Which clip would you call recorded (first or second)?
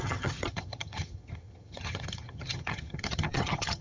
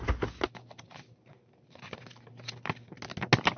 second